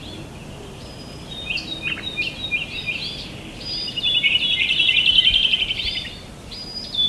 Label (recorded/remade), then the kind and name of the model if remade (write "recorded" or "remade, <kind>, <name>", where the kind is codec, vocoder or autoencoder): recorded